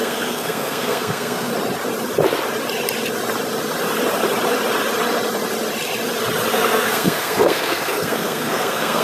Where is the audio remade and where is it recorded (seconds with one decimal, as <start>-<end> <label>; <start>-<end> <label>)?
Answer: 0.0-1.5 remade; 1.5-6.5 recorded; 6.5-9.0 remade